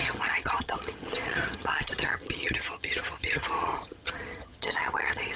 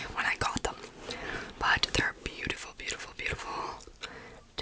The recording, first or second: second